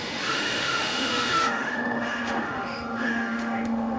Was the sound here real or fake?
fake